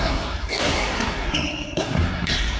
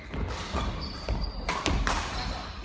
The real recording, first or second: second